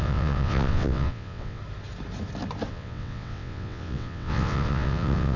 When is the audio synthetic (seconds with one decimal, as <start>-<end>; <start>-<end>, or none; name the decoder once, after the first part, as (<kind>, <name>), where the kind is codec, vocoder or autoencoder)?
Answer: 0.0-1.6 (vocoder, WaveNeXt); 2.7-5.4